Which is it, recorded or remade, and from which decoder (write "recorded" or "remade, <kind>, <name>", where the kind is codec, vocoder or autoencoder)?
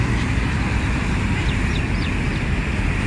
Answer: recorded